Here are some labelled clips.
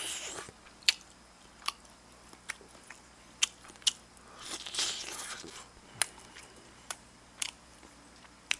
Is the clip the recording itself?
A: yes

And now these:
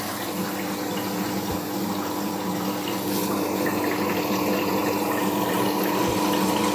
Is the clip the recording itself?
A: yes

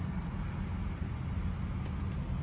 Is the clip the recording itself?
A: yes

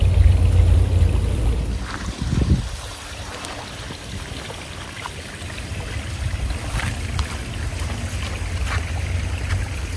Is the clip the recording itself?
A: yes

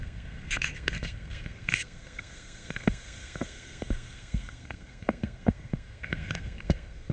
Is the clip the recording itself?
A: no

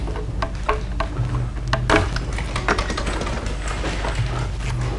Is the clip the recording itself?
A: yes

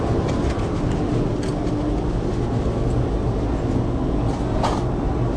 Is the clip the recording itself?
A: yes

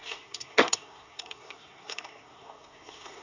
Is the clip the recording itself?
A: no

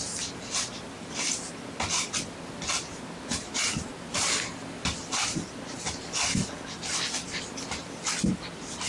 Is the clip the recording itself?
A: yes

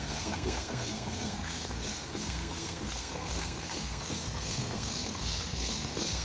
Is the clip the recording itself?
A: no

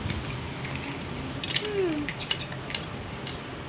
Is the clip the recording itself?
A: yes